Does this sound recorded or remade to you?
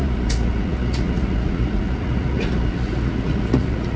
remade